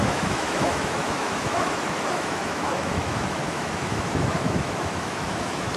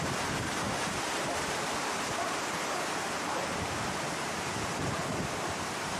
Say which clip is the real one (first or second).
second